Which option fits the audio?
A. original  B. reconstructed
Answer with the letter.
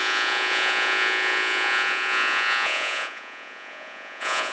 B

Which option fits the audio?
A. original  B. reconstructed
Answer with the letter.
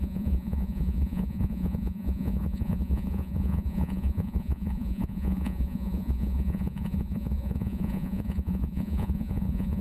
B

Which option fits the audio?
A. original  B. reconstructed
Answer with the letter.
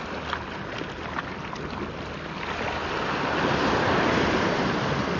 A